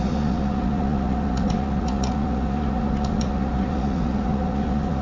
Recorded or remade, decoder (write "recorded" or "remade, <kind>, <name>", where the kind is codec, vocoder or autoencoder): remade, vocoder, Vocos